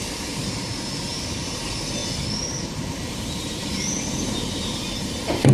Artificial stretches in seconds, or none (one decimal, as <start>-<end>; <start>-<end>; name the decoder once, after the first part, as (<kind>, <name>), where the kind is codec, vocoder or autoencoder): 0.0-0.4 (vocoder, BigVGAN v2); 1.1-2.0; 2.6-5.5